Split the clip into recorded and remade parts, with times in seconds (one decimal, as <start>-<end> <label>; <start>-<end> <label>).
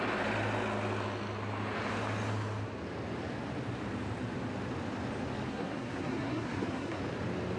0.0-5.5 recorded; 5.5-7.0 remade; 7.0-7.6 recorded